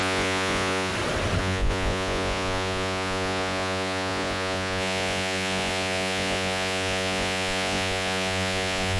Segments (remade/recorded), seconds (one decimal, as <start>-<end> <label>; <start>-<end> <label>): 0.0-0.9 remade; 0.9-1.4 recorded; 1.4-9.0 remade